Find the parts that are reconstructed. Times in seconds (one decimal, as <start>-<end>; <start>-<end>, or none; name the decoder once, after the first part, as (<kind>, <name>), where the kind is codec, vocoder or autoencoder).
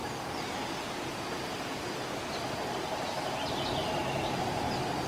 none